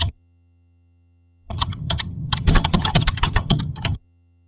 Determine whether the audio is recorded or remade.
remade